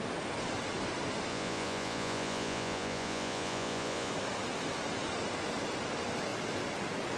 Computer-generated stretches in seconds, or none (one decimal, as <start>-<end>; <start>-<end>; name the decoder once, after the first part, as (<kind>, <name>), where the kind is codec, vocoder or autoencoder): 1.3-4.1 (vocoder, Vocos)